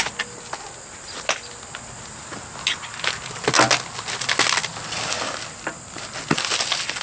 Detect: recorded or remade recorded